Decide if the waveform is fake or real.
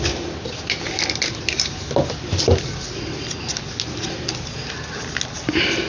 real